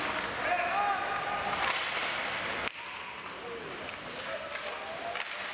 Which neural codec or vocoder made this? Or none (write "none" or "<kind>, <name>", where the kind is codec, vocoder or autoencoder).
none